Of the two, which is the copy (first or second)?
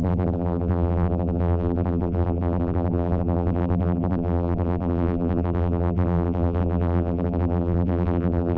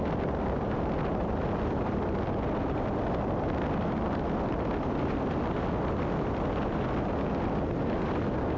first